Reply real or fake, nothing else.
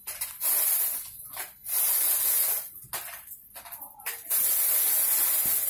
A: real